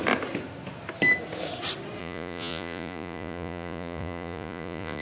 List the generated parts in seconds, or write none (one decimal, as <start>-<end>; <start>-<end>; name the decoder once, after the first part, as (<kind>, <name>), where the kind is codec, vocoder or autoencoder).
2.0-5.0 (vocoder, Vocos)